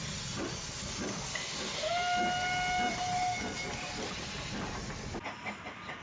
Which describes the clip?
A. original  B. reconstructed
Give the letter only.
A